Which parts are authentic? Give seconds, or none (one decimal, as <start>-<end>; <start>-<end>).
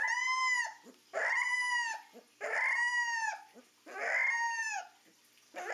0.0-5.7